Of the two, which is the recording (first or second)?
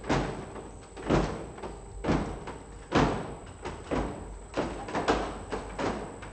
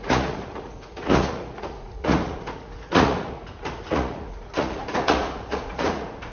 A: first